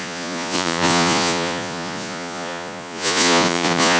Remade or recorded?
remade